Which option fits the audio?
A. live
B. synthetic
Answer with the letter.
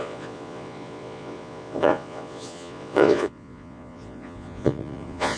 B